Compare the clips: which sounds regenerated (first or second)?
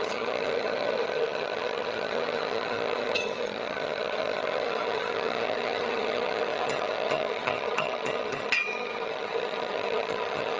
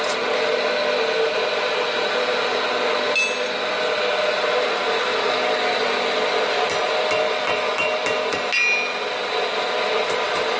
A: first